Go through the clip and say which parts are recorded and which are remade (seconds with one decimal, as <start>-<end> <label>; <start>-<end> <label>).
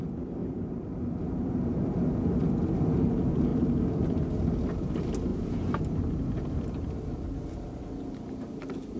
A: 0.0-9.0 recorded